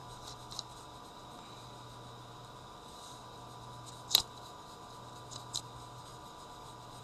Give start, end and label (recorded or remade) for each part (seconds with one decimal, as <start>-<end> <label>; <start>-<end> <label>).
0.0-7.0 recorded